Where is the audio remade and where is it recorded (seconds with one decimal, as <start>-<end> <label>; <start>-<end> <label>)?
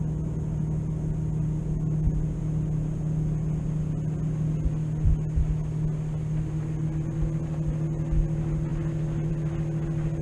0.0-10.2 recorded